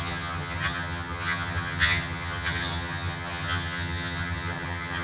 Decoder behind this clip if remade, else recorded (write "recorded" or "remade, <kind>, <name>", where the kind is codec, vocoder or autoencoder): remade, vocoder, HiFi-GAN